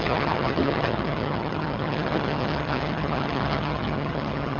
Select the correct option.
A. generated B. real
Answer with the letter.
A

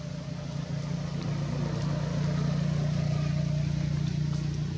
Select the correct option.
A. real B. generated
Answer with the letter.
A